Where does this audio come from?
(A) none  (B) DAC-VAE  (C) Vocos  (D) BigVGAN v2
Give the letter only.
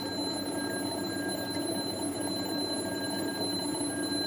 A